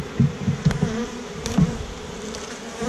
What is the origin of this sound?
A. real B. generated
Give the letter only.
B